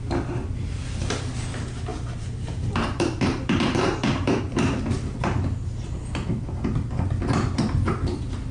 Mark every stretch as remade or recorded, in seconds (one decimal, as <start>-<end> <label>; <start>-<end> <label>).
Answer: 0.0-1.9 recorded; 1.9-4.4 remade; 4.4-8.5 recorded